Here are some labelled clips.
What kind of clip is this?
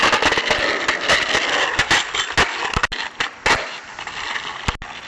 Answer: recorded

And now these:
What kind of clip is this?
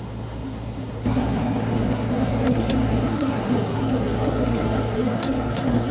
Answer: remade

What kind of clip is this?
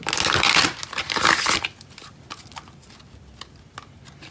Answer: recorded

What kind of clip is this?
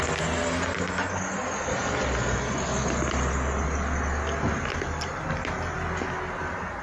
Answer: recorded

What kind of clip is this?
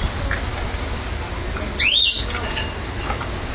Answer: recorded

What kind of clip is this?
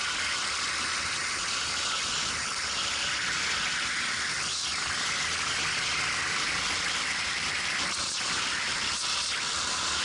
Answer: recorded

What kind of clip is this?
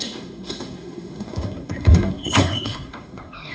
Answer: remade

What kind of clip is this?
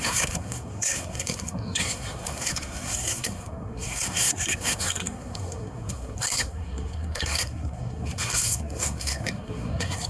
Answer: remade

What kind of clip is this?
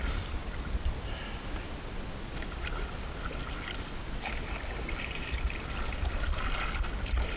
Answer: recorded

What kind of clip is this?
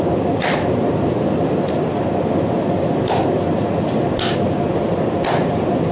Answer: recorded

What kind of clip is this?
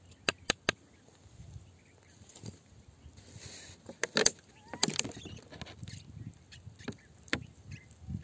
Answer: recorded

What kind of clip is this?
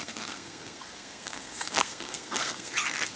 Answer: remade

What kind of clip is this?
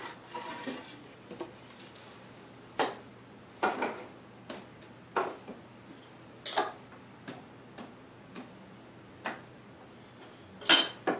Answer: recorded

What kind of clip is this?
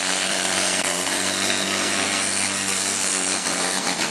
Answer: remade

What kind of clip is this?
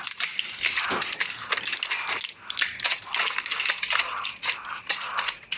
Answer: recorded